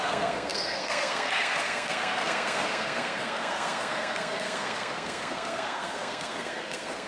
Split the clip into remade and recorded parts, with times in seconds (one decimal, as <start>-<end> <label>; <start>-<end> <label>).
0.0-7.1 remade